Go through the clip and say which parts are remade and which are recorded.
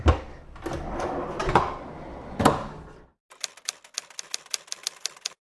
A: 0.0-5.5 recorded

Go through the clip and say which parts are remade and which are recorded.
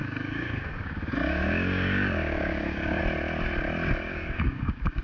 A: 0.0-3.0 remade; 3.0-4.1 recorded; 4.1-5.0 remade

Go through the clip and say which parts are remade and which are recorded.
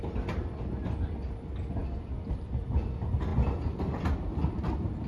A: 0.0-5.1 recorded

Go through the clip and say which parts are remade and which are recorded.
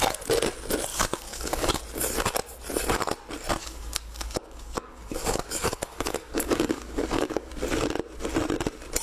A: 0.0-0.9 recorded; 0.9-1.8 remade; 1.8-3.6 recorded; 3.6-7.5 remade; 7.5-9.0 recorded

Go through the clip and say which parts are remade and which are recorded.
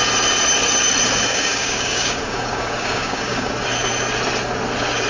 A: 0.0-1.3 recorded; 1.3-3.5 remade; 3.5-5.1 recorded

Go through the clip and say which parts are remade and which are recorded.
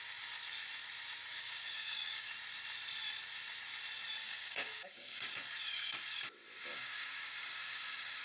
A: 0.0-1.3 recorded; 1.3-2.3 remade; 2.3-4.2 recorded; 4.2-5.3 remade; 5.3-6.7 recorded; 6.7-8.2 remade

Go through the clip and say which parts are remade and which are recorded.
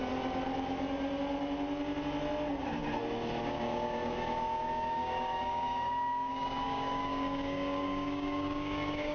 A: 0.0-3.4 recorded; 3.4-9.1 remade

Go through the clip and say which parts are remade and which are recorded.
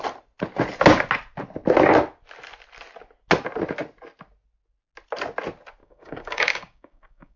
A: 0.0-5.8 recorded; 5.8-7.4 remade